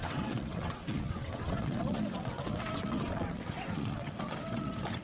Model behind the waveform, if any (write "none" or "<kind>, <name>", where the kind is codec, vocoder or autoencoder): vocoder, WaveNeXt